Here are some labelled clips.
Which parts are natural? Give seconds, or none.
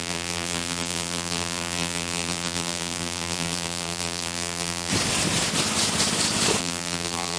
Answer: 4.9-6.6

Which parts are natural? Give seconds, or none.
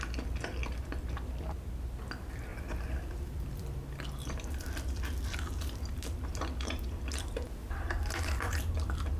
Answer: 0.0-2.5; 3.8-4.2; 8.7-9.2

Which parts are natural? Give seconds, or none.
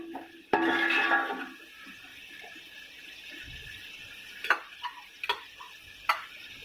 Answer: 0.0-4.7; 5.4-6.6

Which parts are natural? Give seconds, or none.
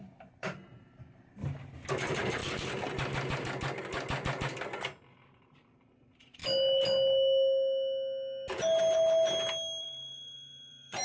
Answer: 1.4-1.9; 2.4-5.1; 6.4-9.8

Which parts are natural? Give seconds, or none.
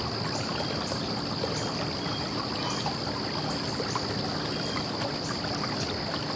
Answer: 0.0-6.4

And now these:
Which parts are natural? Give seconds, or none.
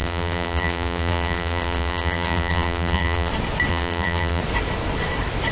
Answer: 3.3-3.7; 4.4-5.5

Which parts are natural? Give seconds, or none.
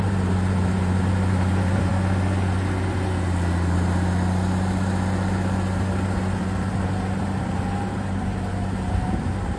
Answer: 1.9-6.4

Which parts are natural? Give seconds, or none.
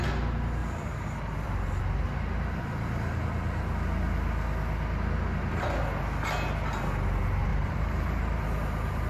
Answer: 0.0-0.6; 3.2-7.5